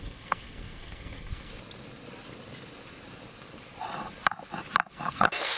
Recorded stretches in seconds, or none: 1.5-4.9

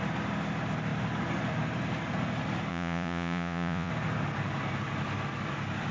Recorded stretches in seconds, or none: 0.0-2.7; 3.9-5.9